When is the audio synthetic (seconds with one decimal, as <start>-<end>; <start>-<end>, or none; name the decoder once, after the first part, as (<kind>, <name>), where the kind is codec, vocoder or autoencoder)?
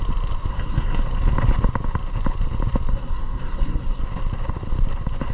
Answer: 0.5-1.0 (codec, SNAC); 2.9-4.0